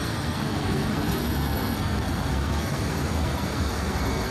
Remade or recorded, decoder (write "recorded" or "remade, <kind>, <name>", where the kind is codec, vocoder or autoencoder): remade, codec, SNAC